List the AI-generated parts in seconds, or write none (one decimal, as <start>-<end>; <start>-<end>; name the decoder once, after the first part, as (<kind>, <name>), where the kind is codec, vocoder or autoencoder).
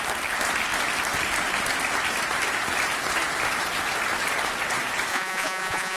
5.1-6.0 (vocoder, Vocos)